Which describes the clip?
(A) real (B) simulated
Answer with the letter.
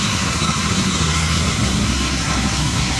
B